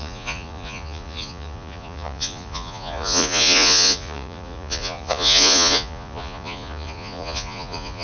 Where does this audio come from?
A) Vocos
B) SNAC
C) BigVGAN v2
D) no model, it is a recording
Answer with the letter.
A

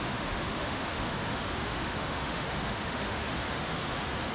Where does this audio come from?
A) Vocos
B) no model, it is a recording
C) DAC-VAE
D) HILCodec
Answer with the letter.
C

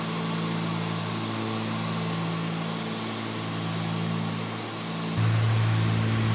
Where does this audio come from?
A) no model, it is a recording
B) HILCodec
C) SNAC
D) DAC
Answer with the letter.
A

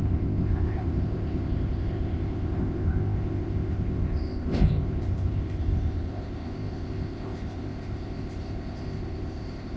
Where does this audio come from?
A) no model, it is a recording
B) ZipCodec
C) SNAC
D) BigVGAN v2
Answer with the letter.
B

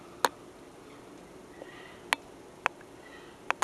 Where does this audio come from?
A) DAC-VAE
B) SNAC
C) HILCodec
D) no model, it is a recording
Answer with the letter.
D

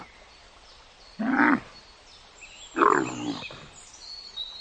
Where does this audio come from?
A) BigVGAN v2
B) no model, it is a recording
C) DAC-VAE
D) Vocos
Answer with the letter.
B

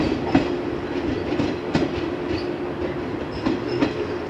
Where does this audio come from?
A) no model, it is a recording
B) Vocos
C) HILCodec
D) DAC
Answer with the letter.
A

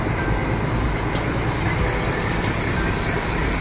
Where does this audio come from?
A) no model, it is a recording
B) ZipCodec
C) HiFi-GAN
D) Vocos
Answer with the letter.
A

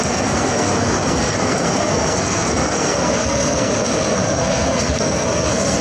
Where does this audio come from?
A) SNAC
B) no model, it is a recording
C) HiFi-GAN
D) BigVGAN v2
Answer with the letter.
A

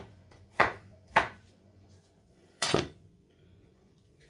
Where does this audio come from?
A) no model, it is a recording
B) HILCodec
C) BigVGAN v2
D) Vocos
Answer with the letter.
D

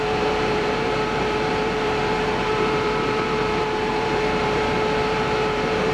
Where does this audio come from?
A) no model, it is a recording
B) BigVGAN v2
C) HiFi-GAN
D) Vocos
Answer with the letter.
B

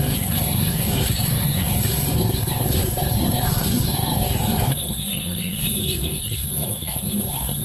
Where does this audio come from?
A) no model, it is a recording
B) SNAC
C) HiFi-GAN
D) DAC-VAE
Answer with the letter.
B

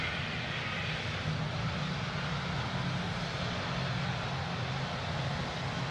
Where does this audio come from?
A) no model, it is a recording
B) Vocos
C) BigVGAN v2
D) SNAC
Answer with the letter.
A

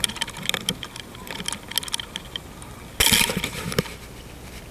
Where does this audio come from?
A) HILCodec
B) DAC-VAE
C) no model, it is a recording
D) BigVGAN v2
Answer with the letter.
C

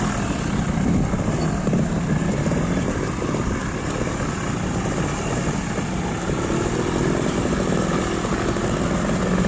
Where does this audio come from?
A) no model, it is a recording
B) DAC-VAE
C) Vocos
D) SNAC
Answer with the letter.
A